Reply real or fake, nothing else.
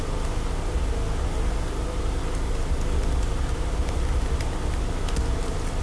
real